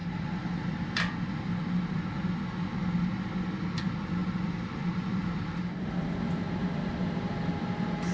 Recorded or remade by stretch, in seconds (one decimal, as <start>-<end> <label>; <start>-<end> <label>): 0.0-1.5 remade; 1.5-4.2 recorded; 4.2-8.1 remade